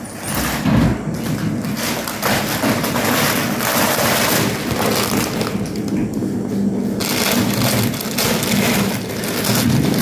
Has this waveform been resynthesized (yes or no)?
no